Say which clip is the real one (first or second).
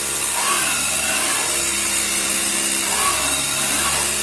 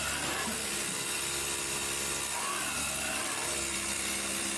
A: first